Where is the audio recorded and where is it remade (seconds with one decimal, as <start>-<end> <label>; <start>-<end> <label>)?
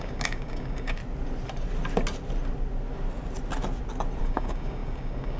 0.0-1.0 remade; 1.0-4.2 recorded; 4.2-5.4 remade